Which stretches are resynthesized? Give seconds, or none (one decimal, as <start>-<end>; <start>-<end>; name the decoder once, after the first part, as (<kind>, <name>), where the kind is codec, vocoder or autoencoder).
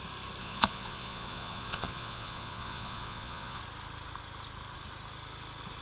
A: 0.4-3.6 (vocoder, Vocos)